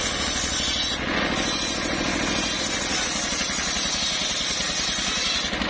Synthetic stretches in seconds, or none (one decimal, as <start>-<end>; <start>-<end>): none